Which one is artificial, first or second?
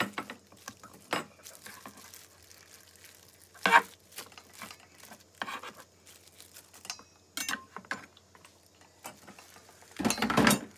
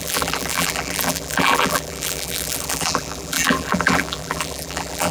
second